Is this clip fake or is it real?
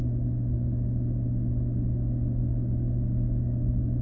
real